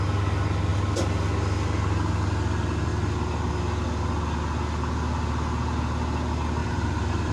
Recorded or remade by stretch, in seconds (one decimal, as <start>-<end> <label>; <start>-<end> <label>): 0.0-6.6 recorded; 6.6-7.3 remade